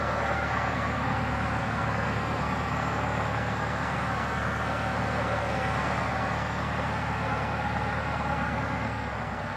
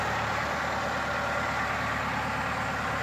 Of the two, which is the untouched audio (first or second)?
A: second